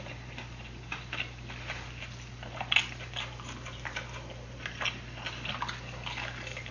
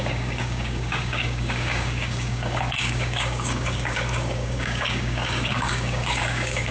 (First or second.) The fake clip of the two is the second